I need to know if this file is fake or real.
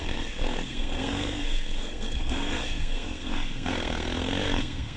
fake